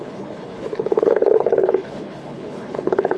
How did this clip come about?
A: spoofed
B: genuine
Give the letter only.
A